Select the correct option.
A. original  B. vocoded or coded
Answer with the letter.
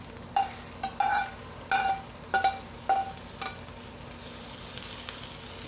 A